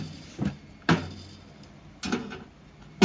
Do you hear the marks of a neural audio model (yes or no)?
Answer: no